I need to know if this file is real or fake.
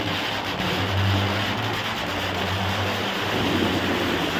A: real